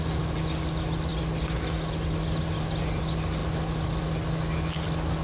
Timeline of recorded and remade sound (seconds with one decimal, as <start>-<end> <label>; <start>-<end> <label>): 0.0-5.2 recorded